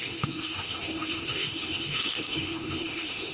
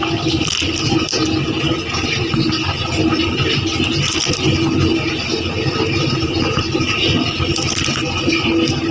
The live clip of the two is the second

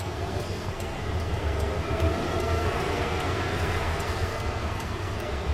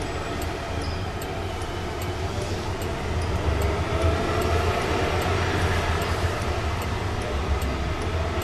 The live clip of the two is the second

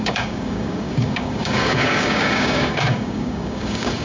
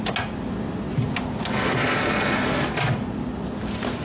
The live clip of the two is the second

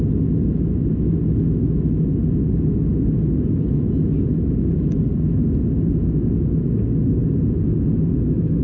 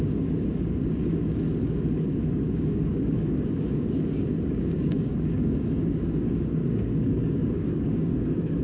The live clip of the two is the first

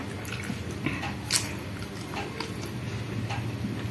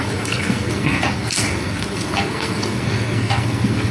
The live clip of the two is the first